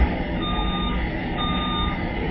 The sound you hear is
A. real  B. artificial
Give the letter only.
B